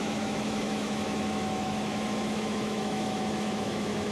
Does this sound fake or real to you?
fake